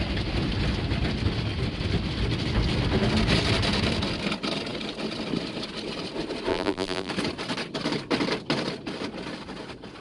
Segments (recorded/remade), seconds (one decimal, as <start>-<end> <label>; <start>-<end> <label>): 0.0-6.5 recorded; 6.5-7.1 remade; 7.1-10.0 recorded